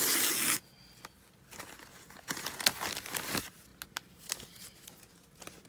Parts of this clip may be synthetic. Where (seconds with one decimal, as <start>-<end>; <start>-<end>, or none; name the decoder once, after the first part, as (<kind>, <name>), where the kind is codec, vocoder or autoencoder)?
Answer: 1.9-2.6 (vocoder, Vocos)